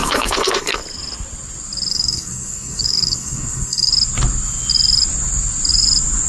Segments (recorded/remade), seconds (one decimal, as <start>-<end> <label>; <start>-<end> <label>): 0.0-0.8 remade; 0.8-1.9 recorded; 1.9-3.9 remade; 3.9-6.3 recorded